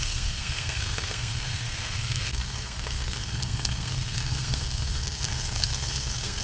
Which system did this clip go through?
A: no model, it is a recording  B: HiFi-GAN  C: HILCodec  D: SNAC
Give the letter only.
D